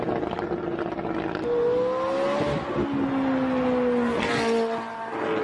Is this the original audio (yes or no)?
yes